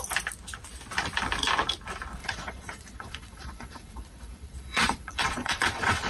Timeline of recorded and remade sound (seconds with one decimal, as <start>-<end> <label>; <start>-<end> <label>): 0.0-2.2 recorded; 2.2-6.1 remade